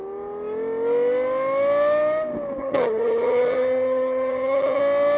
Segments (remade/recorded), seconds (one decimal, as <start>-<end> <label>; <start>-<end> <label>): 0.0-2.6 recorded; 2.6-4.8 remade; 4.8-5.2 recorded